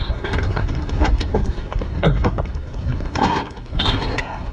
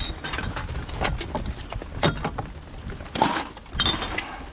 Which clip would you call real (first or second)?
second